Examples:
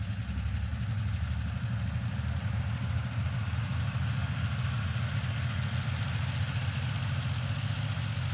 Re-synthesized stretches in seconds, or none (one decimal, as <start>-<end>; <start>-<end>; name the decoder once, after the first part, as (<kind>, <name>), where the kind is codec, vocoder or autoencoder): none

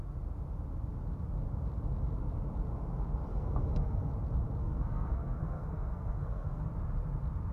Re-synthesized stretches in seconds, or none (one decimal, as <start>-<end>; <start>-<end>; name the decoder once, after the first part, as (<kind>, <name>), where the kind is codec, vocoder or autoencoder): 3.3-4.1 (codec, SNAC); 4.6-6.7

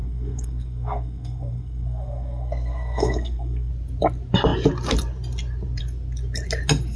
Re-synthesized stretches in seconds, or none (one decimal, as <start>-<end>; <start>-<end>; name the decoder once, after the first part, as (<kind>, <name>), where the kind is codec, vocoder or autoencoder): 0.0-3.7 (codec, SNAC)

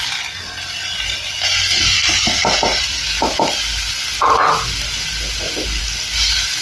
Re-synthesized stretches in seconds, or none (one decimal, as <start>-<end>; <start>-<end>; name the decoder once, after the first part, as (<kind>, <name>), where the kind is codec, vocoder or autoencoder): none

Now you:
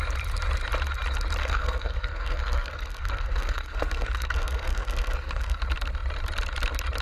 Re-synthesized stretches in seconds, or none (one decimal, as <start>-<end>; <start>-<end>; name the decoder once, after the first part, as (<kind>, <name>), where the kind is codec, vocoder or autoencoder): 1.4-5.6 (codec, SNAC)